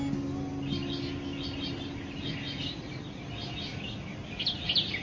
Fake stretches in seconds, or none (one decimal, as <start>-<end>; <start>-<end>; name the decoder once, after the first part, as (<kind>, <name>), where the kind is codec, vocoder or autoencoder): none